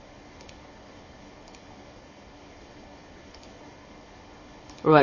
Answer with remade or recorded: remade